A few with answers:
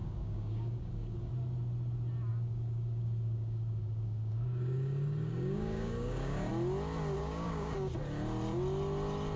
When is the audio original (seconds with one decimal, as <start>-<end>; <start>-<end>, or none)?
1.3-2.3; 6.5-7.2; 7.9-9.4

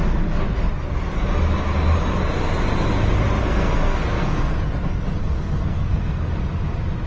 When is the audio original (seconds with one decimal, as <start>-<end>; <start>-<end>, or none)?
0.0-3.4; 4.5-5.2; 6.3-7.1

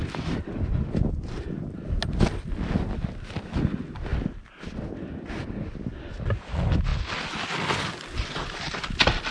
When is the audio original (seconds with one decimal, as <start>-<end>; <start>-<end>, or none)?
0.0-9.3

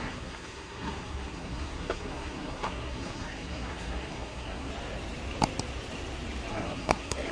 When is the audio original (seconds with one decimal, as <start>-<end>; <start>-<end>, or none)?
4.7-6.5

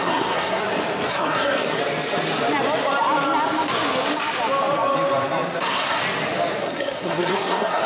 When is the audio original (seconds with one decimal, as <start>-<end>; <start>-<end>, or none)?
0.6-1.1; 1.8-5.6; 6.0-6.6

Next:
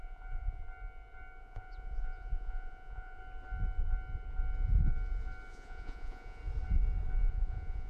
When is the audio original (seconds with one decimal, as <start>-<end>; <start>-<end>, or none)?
0.6-1.4; 3.2-5.5; 6.4-7.3

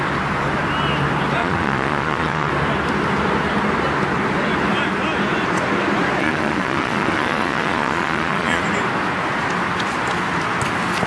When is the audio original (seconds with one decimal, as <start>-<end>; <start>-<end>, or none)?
0.0-1.4; 2.5-6.2; 8.6-11.1